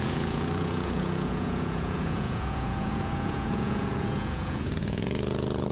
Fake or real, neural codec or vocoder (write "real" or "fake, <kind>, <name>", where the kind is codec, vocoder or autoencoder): fake, vocoder, Vocos